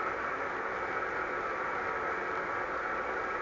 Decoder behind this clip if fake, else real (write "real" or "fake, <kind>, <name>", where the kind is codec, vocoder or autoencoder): real